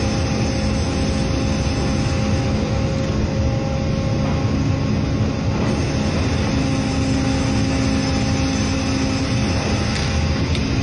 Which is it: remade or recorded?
recorded